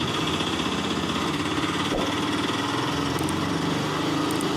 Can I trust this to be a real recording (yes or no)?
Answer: no